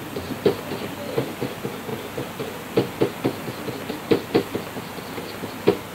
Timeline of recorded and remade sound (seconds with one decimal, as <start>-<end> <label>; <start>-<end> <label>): 0.0-5.9 recorded